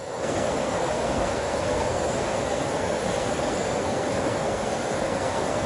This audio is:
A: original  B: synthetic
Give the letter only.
B